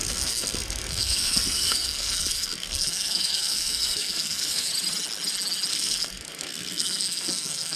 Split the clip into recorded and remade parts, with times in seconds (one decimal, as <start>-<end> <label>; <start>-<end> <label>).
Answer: 0.0-4.7 remade; 4.7-5.7 recorded; 5.7-7.8 remade